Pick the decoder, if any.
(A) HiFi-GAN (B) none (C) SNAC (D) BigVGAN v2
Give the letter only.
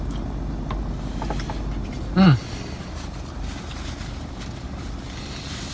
B